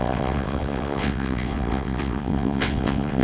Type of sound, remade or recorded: remade